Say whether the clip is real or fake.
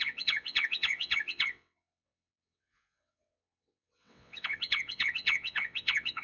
fake